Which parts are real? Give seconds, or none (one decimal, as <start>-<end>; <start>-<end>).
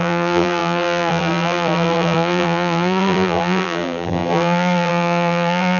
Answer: none